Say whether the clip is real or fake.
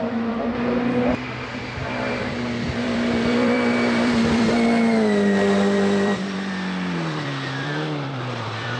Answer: fake